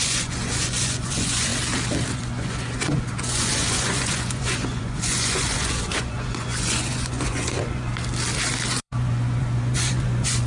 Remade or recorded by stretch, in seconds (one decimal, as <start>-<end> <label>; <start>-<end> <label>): 0.0-1.5 remade; 1.5-2.1 recorded; 2.1-7.9 remade; 7.9-8.7 recorded; 8.7-10.5 remade